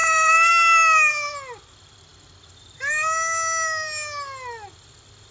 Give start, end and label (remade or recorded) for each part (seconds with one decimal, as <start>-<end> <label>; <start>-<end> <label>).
0.0-0.5 remade; 0.5-5.3 recorded